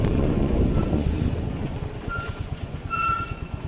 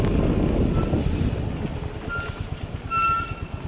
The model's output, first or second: first